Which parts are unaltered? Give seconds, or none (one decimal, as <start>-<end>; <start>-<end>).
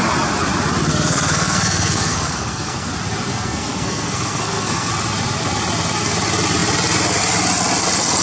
0.0-0.9; 2.9-3.3; 4.9-8.2